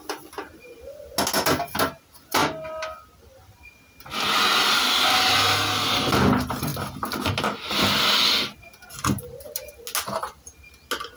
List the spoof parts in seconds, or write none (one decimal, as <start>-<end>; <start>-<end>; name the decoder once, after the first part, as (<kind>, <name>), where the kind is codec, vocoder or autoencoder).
none